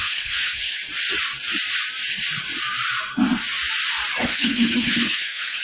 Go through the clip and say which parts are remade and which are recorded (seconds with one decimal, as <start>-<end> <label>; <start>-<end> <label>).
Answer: 0.0-0.8 remade; 0.8-4.2 recorded; 4.2-5.6 remade